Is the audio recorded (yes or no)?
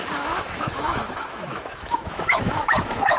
no